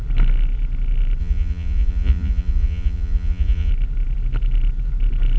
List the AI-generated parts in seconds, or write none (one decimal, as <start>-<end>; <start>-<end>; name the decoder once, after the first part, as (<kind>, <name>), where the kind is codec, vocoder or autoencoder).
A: 1.2-3.7 (vocoder, Vocos)

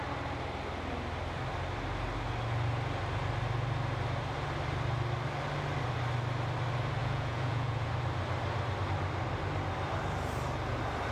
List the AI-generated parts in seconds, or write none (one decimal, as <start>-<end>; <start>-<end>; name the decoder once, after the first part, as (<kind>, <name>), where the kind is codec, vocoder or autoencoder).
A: 7.0-7.9 (vocoder, Vocos)

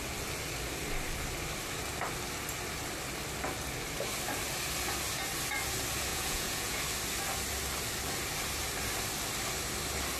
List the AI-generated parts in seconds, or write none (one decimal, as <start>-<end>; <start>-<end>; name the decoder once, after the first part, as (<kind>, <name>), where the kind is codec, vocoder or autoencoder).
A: 6.1-6.8 (vocoder, Vocos)

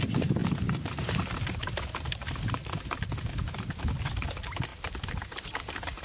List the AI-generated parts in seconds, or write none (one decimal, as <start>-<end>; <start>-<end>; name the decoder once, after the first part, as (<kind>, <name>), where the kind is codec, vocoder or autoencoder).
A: none

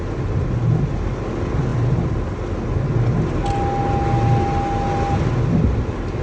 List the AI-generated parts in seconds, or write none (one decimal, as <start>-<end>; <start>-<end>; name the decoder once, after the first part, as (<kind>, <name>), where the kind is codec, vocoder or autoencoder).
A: none

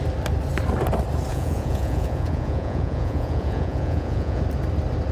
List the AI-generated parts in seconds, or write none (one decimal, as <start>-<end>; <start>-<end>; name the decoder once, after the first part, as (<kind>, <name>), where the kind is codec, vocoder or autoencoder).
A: 1.3-4.4 (vocoder, Vocos)